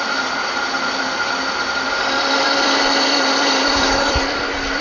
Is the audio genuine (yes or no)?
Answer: no